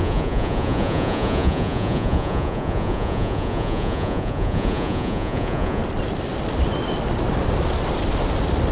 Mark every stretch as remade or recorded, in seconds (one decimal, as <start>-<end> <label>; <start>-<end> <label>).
0.0-5.8 remade; 5.8-8.7 recorded